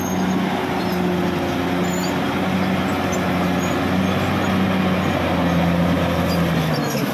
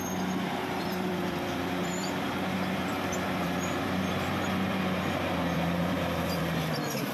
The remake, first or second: second